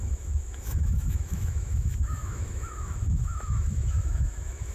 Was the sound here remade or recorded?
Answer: remade